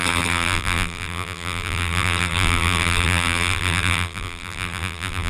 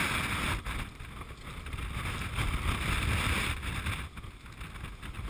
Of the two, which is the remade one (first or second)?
first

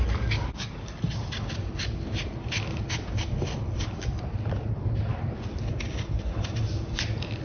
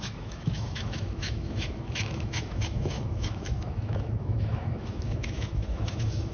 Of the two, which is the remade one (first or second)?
second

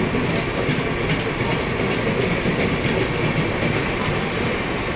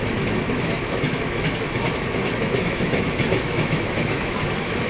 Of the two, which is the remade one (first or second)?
second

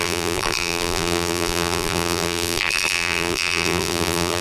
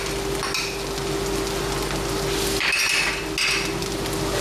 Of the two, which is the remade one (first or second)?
first